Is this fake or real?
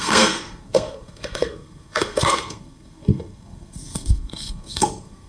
fake